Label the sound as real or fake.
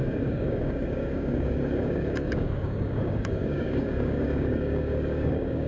fake